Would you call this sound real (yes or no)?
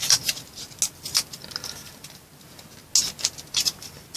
yes